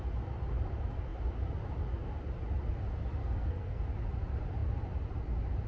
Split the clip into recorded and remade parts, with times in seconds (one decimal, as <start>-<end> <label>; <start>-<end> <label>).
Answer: 0.0-3.2 recorded; 3.2-3.8 remade; 3.8-5.7 recorded